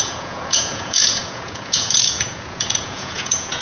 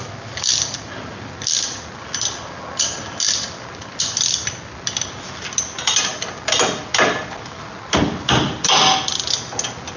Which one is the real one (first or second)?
second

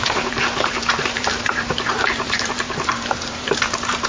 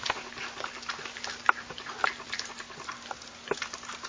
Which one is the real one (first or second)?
second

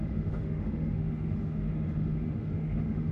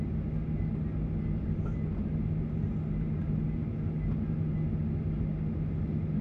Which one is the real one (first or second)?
second